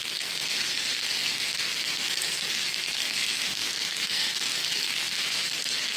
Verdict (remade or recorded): remade